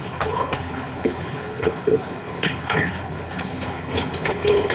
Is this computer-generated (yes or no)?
yes